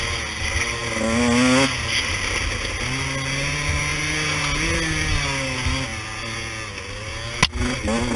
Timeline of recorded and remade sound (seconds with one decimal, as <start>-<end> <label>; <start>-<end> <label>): 0.0-8.2 recorded